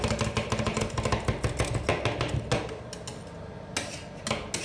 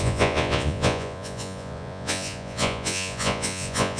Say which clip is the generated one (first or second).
second